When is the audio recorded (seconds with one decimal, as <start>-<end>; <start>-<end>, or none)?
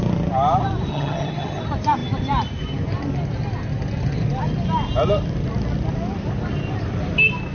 0.0-0.9; 1.6-7.5